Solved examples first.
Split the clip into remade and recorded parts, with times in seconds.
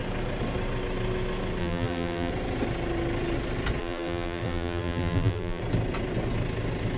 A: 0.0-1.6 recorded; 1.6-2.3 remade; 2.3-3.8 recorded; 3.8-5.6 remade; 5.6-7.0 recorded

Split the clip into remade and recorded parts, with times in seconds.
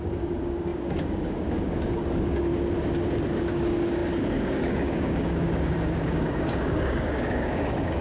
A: 0.0-2.5 remade; 2.5-3.4 recorded; 3.4-8.0 remade